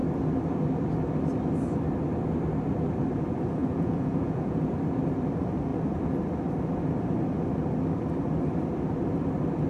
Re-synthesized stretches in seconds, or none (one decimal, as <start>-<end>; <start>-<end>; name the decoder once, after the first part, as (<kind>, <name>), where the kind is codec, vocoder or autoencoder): 3.6-4.7 (vocoder, Vocos)